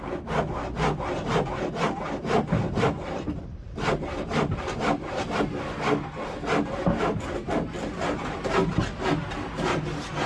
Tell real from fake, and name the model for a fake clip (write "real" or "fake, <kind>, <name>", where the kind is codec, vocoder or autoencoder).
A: real